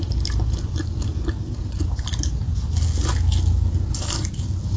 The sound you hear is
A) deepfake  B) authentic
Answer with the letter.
B